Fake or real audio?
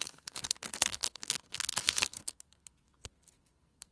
fake